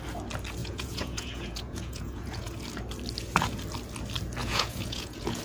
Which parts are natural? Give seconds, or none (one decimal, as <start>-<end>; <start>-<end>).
0.0-0.6; 2.6-4.4